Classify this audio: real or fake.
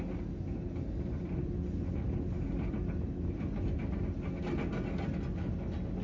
real